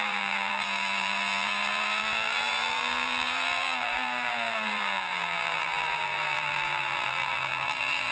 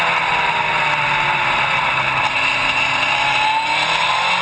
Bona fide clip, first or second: second